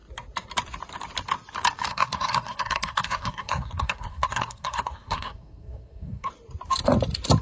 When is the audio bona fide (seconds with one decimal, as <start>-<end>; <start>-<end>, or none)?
0.0-1.9; 6.3-7.4